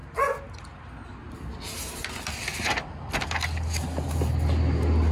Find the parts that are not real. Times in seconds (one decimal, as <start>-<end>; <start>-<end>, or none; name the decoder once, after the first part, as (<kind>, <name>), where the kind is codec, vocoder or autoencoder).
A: none